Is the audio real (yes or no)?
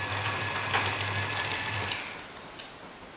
yes